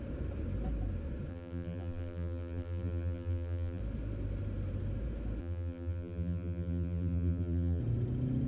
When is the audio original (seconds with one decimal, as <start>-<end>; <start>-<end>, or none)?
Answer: 0.0-1.3; 3.8-5.4; 7.8-8.5